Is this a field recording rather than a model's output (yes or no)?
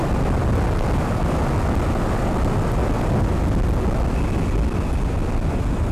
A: yes